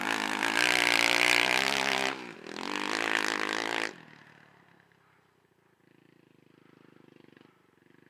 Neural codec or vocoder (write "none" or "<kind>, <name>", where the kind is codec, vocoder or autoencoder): none